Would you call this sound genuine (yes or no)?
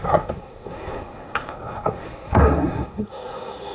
no